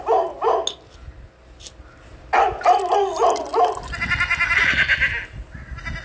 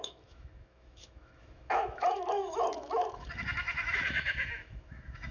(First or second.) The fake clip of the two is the second